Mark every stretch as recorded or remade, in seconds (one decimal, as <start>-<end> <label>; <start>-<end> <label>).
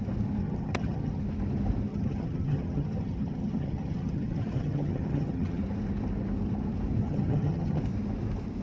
0.0-0.4 recorded; 0.4-1.2 remade; 1.2-1.9 recorded; 1.9-5.6 remade; 5.6-7.0 recorded; 7.0-7.8 remade; 7.8-8.6 recorded